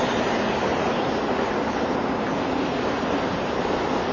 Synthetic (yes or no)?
no